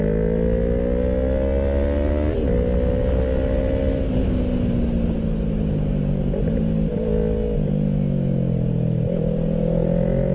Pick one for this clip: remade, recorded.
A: recorded